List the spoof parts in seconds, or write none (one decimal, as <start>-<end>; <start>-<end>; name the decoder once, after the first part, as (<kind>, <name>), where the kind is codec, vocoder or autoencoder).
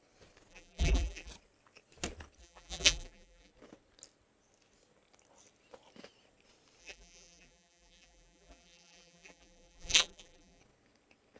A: 0.5-1.3 (vocoder, BigVGAN v2); 2.4-3.5; 6.8-10.6